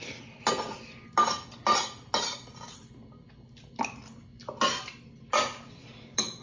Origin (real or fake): real